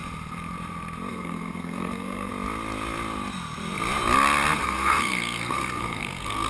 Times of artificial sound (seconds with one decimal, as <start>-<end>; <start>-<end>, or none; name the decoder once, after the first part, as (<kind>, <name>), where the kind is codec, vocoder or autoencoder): 1.1-2.3 (codec, SNAC); 4.6-6.5